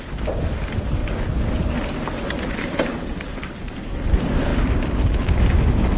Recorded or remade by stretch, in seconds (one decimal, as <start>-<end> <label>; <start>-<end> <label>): 0.0-1.0 remade; 1.0-2.1 recorded; 2.1-4.5 remade; 4.5-5.3 recorded; 5.3-6.0 remade